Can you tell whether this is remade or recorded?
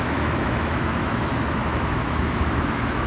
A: remade